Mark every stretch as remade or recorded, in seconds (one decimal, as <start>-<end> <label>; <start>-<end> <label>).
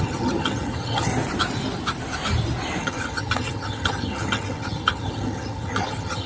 0.0-1.1 remade; 1.1-2.8 recorded; 2.8-6.3 remade